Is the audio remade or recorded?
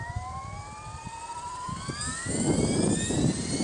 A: remade